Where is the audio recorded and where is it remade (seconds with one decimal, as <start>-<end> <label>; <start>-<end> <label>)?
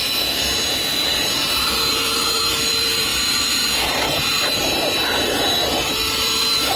0.0-6.8 remade